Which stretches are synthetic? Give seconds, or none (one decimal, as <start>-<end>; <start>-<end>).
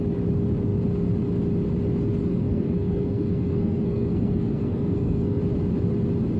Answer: 2.3-5.4